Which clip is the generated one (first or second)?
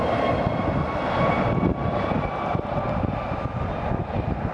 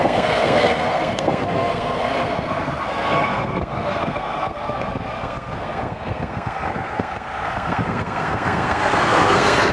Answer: second